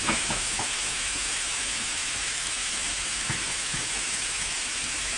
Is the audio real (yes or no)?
no